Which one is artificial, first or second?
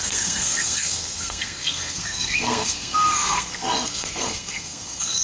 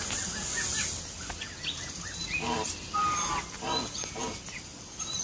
first